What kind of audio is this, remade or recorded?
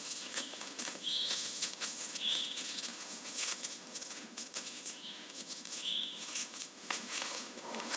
remade